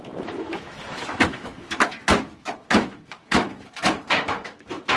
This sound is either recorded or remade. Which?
remade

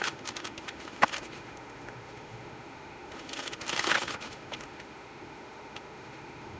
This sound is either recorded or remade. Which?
remade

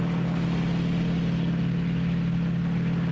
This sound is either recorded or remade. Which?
recorded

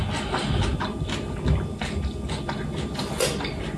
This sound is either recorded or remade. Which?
recorded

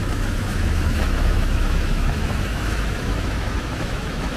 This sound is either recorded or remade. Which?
remade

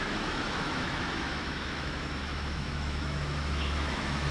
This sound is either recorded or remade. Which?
remade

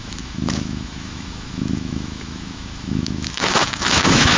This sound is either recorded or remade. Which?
remade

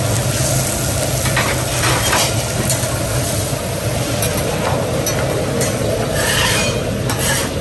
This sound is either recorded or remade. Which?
recorded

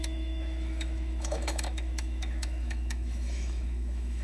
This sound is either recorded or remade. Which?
remade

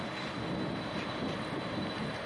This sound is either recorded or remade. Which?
recorded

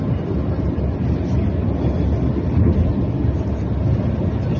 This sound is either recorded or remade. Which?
recorded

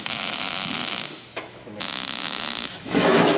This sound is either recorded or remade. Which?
remade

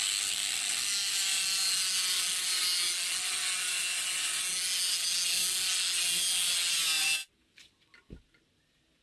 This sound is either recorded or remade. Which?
recorded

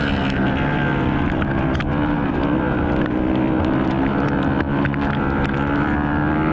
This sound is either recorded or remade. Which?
recorded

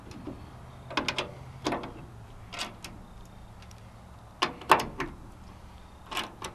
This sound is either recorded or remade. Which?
recorded